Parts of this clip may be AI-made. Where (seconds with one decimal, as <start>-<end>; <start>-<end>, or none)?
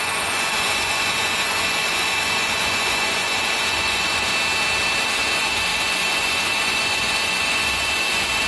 0.0-4.3; 5.0-8.5